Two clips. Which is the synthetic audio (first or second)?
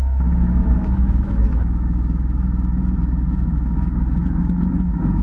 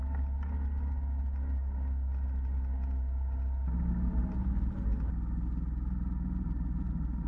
first